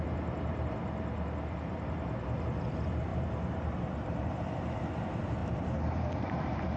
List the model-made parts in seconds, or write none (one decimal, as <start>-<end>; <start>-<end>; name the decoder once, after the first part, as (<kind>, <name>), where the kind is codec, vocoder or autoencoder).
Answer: 3.1-4.8 (vocoder, BigVGAN v2); 5.4-6.8